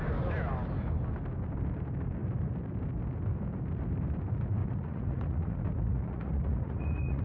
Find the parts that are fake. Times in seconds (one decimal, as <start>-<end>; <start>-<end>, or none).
4.6-7.2